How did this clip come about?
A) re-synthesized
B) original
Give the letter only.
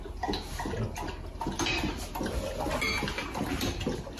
B